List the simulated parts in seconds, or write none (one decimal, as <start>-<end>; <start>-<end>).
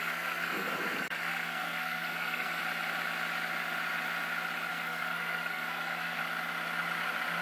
0.0-2.6; 4.7-6.2